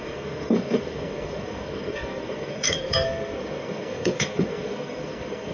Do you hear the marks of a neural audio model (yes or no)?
yes